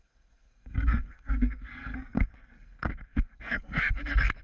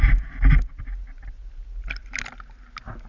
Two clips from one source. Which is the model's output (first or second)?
first